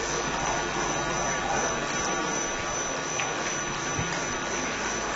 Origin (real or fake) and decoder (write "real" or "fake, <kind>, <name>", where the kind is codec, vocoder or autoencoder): real